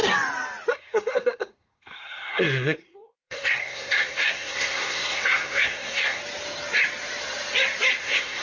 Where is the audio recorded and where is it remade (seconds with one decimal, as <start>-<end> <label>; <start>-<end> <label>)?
0.0-0.7 recorded; 0.7-6.2 remade; 6.2-8.0 recorded; 8.0-8.4 remade